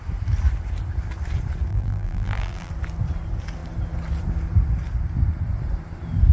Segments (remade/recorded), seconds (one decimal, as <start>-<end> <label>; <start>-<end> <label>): 0.0-1.7 recorded; 1.7-2.7 remade; 2.7-6.3 recorded